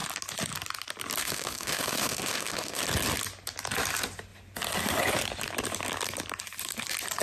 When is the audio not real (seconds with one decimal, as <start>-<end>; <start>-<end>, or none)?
1.2-2.8

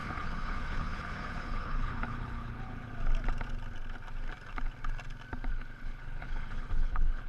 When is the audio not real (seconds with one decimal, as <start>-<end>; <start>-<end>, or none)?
0.0-2.9; 5.5-7.3

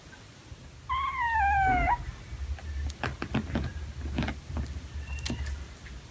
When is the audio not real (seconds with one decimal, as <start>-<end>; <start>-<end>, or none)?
none

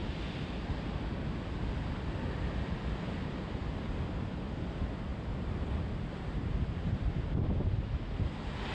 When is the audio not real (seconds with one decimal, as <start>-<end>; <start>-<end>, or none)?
none

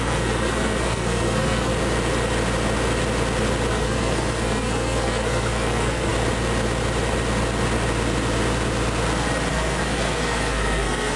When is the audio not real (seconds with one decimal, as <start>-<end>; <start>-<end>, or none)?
0.0-1.7; 3.7-6.1; 9.5-11.2

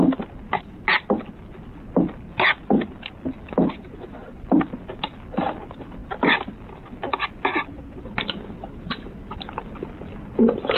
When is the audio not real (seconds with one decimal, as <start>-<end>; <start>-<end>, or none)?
none

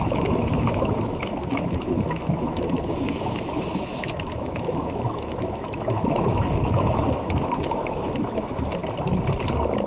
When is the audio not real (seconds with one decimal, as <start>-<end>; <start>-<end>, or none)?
0.0-8.8

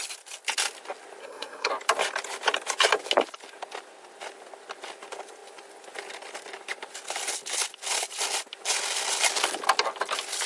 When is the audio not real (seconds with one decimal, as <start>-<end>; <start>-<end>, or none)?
1.2-1.7